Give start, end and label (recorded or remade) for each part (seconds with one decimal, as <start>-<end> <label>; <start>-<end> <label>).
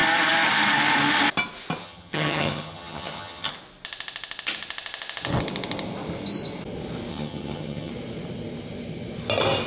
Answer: 0.0-1.8 recorded; 1.8-3.5 remade; 3.5-7.1 recorded; 7.1-7.9 remade; 7.9-9.7 recorded